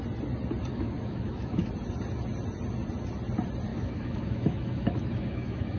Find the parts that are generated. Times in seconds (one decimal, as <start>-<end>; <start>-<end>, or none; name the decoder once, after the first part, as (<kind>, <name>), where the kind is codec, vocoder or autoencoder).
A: 0.7-1.7 (autoencoder, DAC-VAE); 3.7-5.8